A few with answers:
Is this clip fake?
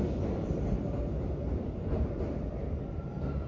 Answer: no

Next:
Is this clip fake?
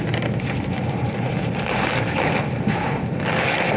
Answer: no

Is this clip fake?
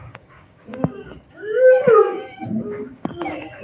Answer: yes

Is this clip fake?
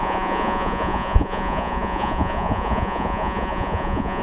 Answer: yes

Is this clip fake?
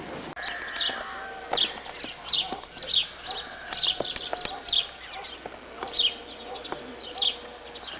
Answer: no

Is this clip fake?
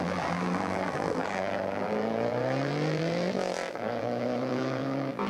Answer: yes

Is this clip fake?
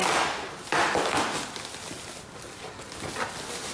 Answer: no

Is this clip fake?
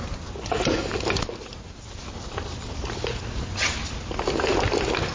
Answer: no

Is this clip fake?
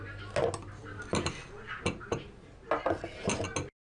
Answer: no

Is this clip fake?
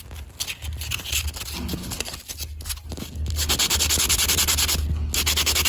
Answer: no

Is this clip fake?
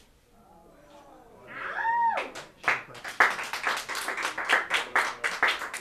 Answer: no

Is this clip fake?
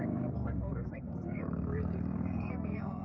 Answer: yes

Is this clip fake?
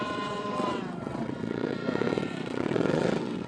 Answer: yes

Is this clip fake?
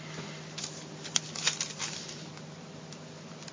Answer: no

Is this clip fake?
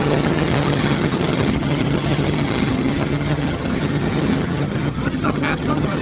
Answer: yes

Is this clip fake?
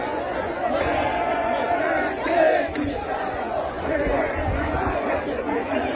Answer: yes